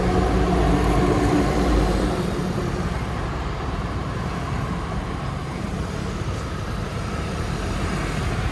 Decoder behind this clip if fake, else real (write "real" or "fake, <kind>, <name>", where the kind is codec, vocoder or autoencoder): fake, vocoder, BigVGAN v2